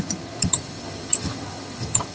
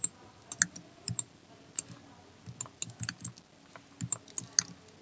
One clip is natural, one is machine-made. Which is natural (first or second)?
second